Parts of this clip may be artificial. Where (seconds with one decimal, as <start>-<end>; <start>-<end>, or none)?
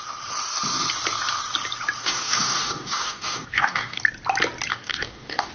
2.0-4.0; 4.7-5.5